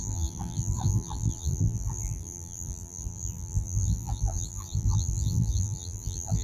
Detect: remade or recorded remade